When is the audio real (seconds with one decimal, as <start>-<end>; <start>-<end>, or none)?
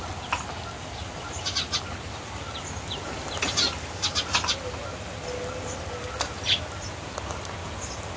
0.0-8.2